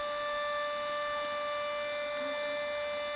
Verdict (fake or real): real